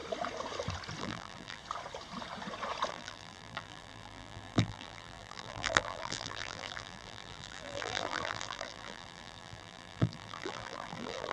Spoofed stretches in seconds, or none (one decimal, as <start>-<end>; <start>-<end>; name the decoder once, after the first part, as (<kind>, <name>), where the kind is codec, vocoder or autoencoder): 1.0-1.6 (vocoder, BigVGAN v2); 2.9-11.3